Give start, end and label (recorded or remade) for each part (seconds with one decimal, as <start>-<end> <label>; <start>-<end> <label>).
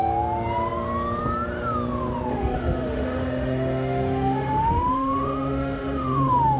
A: 0.0-2.3 recorded; 2.3-6.6 remade